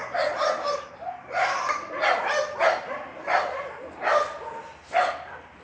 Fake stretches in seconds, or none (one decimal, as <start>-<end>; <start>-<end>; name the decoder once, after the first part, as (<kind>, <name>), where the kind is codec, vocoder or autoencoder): none